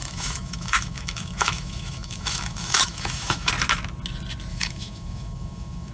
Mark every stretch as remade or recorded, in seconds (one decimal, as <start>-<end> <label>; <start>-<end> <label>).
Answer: 0.0-3.5 remade; 3.5-4.5 recorded; 4.5-5.9 remade